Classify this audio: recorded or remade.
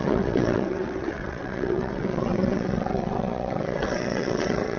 remade